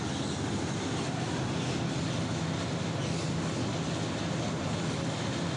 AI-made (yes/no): no